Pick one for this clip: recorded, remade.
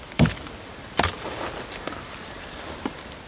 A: remade